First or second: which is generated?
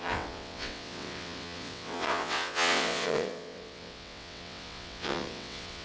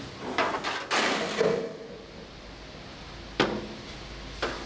first